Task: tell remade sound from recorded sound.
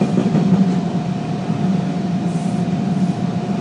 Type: recorded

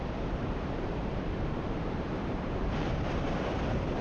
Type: remade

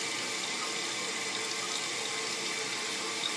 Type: recorded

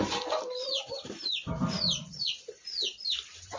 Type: remade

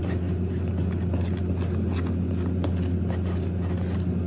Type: recorded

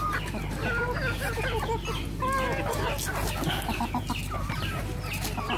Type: recorded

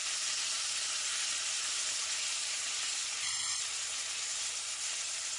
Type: recorded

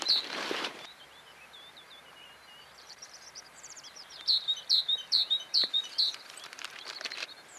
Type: remade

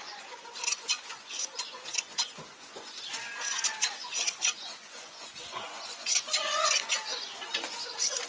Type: remade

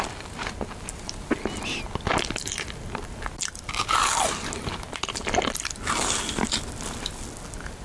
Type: recorded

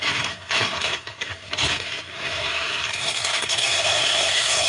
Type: remade